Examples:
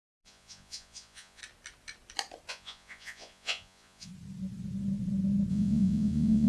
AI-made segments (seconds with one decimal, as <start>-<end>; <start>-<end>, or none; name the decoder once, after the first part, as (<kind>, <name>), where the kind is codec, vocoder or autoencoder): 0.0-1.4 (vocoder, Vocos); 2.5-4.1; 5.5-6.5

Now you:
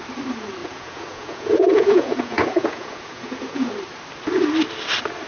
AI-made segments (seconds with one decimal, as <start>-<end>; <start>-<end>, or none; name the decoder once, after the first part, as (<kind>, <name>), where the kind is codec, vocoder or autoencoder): 0.6-3.7 (vocoder, Vocos)

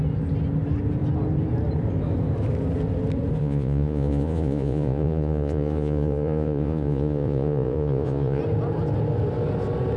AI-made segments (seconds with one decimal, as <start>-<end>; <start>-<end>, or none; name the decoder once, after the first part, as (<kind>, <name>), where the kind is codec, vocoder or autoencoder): 3.4-8.4 (vocoder, Vocos)